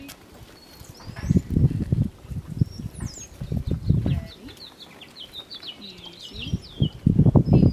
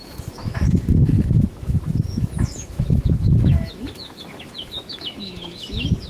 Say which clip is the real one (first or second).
first